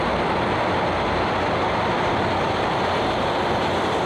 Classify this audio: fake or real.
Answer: real